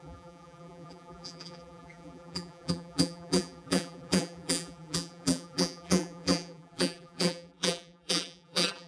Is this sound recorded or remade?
remade